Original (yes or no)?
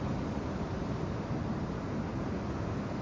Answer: yes